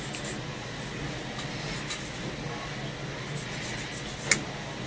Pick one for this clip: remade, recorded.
recorded